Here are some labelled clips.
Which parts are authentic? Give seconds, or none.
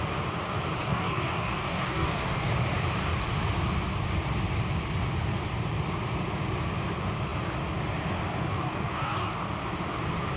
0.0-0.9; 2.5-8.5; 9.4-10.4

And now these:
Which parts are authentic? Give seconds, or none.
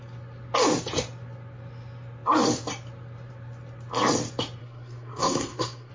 0.0-4.6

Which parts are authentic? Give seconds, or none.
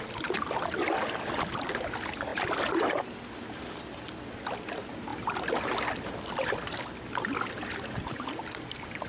0.0-9.1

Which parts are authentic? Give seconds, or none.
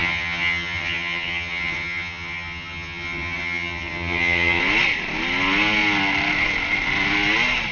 4.6-7.7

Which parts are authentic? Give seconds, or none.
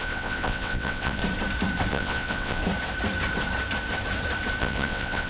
1.2-1.9; 2.6-4.6